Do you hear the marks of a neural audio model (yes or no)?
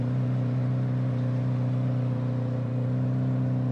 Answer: no